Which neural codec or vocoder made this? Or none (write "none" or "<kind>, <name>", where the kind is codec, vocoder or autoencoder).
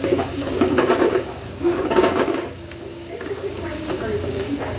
codec, DAC